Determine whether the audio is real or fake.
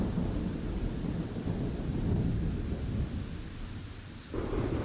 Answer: real